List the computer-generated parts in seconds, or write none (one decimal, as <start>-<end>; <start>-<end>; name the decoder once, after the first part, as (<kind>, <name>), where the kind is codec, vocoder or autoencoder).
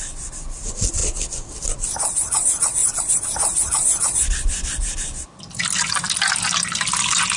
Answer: 0.0-1.0 (vocoder, BigVGAN v2); 1.6-7.4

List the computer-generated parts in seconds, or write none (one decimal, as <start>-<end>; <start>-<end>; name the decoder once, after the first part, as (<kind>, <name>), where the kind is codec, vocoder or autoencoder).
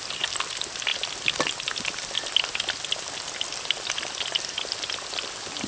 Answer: none